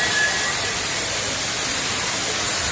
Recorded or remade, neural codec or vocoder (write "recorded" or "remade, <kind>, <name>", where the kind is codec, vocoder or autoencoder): remade, vocoder, BigVGAN v2